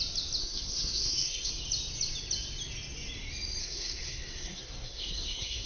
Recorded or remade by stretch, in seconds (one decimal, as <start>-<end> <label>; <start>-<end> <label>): 0.0-0.4 recorded; 0.4-1.5 remade; 1.5-3.6 recorded; 3.6-5.7 remade